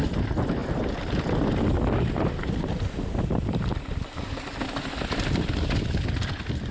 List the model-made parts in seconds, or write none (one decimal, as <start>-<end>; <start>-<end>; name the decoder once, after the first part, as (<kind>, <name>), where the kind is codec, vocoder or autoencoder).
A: none